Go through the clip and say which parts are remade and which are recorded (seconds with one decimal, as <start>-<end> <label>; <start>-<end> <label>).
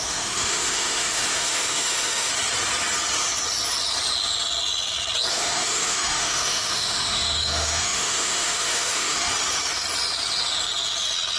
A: 0.0-2.3 remade; 2.3-5.3 recorded; 5.3-9.3 remade; 9.3-11.4 recorded